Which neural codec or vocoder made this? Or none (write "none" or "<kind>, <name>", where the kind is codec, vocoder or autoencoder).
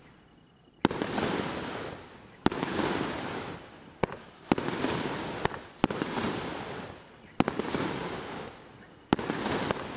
none